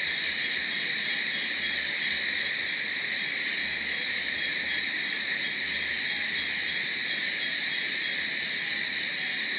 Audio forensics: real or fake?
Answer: real